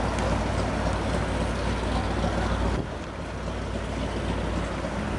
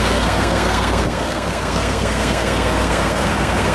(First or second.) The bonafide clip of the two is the first